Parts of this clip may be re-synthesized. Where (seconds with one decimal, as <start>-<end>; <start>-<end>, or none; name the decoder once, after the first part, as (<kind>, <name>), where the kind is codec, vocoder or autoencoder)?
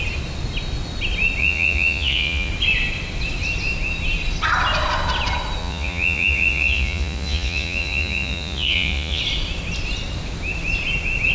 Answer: 1.4-2.5 (vocoder, Vocos); 5.6-9.2